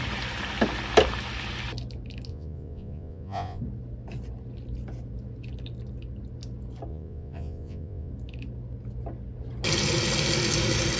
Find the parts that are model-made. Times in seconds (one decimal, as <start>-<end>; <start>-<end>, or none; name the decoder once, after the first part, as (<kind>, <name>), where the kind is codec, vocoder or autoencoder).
2.3-3.6 (vocoder, Vocos); 6.9-8.1